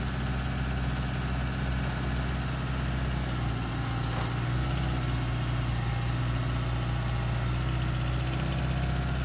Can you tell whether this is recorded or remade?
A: recorded